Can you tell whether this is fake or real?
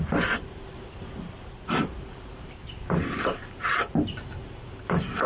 real